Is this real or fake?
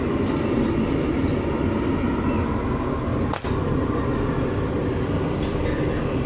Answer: real